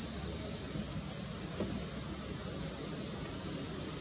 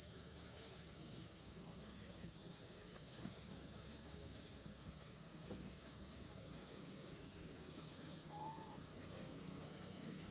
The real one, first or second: first